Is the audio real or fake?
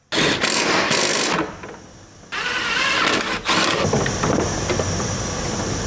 real